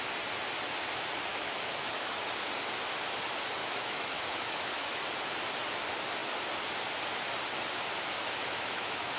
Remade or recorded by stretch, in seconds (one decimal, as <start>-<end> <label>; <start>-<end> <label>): 0.0-1.3 recorded; 1.3-2.2 remade; 2.2-3.6 recorded; 3.6-5.0 remade; 5.0-8.4 recorded; 8.4-9.2 remade